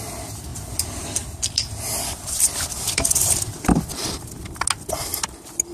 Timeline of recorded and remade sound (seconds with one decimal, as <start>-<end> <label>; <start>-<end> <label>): 0.0-0.5 recorded; 0.5-3.7 remade; 3.7-5.1 recorded; 5.1-5.7 remade